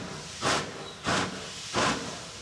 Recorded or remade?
recorded